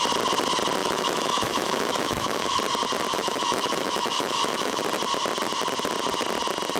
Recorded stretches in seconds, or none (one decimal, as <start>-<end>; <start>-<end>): 0.0-0.8; 2.6-3.1; 4.8-6.8